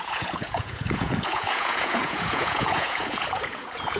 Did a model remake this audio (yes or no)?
yes